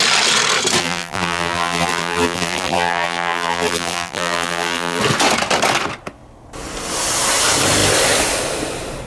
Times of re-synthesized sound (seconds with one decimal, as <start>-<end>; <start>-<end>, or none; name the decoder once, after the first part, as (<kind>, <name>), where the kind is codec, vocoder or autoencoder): 0.8-5.0 (vocoder, BigVGAN v2)